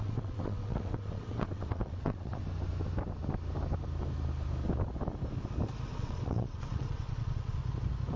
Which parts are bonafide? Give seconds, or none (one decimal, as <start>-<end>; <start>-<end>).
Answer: 2.4-5.9; 7.6-8.2